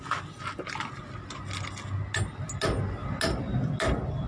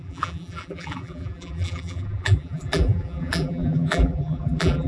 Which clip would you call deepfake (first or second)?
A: second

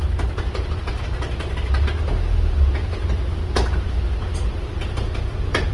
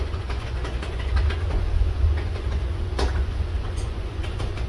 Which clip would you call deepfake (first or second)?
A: second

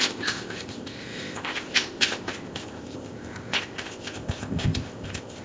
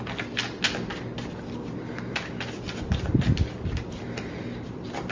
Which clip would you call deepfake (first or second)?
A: first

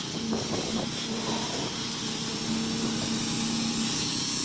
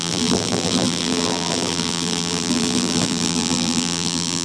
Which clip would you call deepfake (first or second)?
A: second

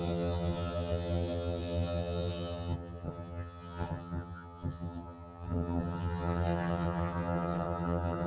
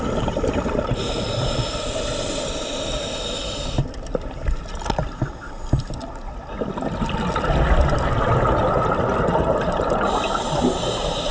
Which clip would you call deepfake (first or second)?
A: first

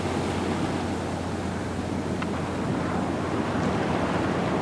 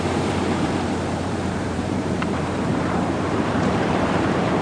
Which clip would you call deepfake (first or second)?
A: second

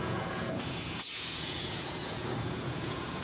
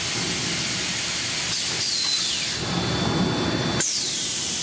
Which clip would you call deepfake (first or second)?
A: first